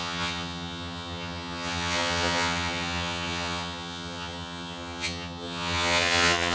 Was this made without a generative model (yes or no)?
no